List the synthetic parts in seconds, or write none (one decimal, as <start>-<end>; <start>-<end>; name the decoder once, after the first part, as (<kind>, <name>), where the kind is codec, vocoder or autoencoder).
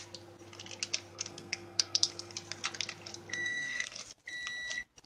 1.1-2.3 (codec, SNAC); 3.3-4.0